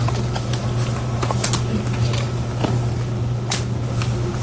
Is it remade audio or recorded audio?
recorded